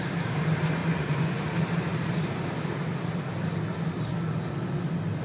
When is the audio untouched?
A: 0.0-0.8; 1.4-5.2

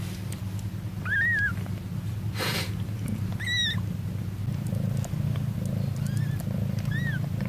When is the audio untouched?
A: 0.0-7.5

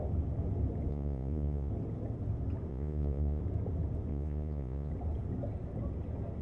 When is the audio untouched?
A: 0.0-0.9; 1.7-2.7; 3.4-4.1; 4.9-6.4

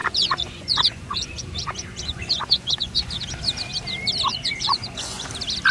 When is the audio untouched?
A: 3.4-4.3; 5.3-5.7

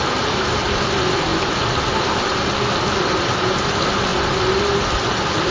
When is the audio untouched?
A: 0.0-5.5

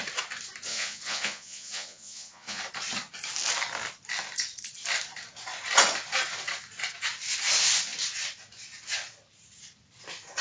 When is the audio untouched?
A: 0.0-0.7; 2.6-10.4

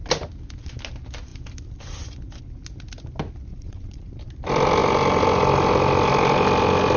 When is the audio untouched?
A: 0.0-3.5; 4.1-7.0

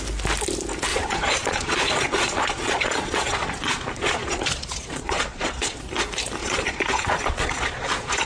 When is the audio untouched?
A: 0.0-0.9; 5.8-6.4